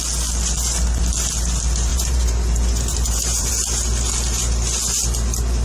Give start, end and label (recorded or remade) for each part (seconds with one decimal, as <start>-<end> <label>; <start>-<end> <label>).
0.0-1.9 recorded; 1.9-3.5 remade; 3.5-5.6 recorded